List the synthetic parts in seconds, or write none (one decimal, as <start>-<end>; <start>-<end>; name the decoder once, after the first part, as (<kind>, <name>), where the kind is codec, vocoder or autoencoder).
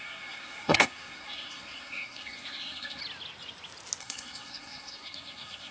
0.0-3.0 (codec, SNAC); 4.0-5.7